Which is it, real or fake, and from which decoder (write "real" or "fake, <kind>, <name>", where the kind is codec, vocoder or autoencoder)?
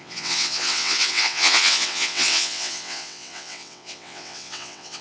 fake, vocoder, WaveNeXt